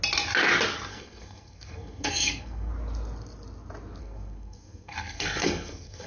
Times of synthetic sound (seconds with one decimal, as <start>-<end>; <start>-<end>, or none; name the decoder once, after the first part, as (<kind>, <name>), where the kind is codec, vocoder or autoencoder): 0.9-2.7 (codec, SNAC); 4.0-6.1